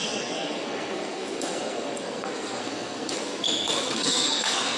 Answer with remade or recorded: remade